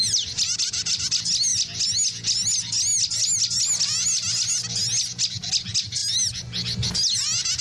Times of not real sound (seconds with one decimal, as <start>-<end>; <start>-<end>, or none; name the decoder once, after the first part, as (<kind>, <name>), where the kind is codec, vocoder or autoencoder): none